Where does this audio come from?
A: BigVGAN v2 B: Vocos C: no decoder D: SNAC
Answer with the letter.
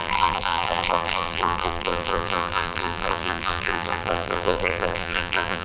A